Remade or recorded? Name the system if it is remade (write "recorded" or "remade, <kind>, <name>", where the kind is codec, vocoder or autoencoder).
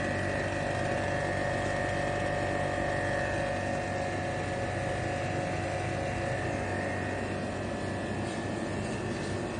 recorded